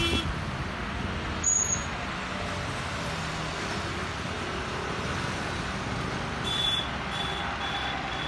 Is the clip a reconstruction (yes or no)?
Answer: no